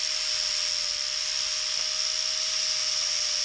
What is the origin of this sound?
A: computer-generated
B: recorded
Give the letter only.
B